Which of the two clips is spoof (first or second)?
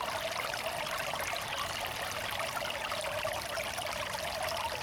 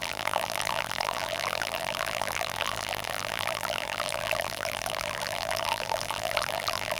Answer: second